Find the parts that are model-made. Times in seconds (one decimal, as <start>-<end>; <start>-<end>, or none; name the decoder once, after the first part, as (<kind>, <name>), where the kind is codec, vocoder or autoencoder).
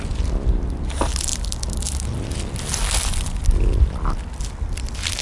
none